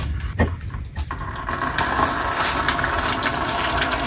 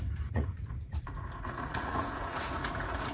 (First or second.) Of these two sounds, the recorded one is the first